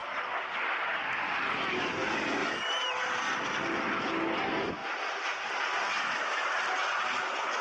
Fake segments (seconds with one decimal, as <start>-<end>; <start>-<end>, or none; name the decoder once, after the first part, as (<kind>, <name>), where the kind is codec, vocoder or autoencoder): 2.4-2.9 (vocoder, BigVGAN v2); 4.8-6.1